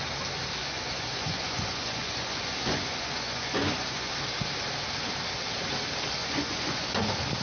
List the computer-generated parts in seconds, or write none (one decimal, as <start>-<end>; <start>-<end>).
0.6-4.1; 6.2-7.0